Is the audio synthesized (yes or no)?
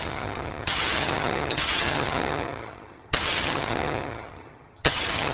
yes